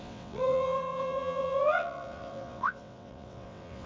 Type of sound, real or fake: fake